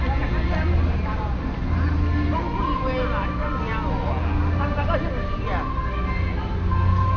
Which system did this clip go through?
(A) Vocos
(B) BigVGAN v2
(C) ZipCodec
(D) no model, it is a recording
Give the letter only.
D